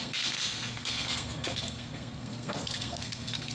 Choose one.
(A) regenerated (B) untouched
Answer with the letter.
A